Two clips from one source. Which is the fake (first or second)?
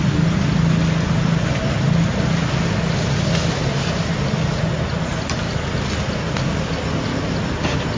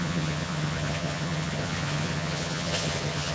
second